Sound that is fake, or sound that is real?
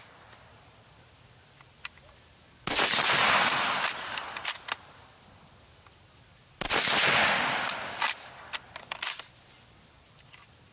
real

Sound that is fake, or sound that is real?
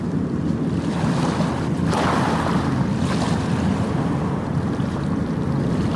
real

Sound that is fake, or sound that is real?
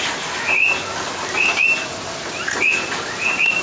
real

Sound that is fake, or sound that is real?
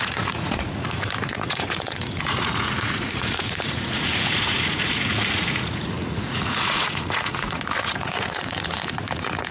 fake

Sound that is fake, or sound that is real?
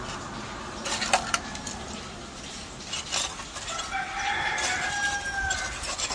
real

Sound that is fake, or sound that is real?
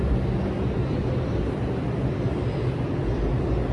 real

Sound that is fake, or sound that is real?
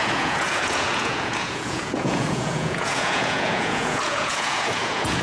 fake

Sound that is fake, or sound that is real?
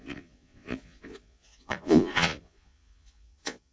fake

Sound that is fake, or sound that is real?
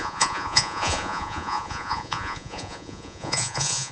fake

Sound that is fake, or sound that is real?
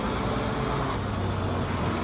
real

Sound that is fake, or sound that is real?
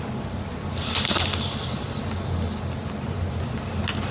real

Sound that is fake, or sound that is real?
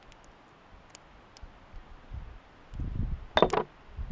real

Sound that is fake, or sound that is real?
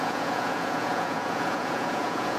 fake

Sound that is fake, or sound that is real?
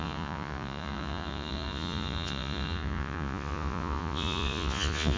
fake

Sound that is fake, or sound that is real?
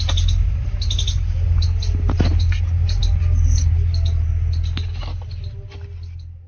real